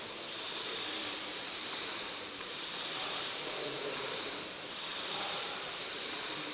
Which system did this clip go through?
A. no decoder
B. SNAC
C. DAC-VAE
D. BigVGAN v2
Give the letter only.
D